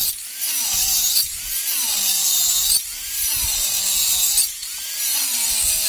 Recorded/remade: remade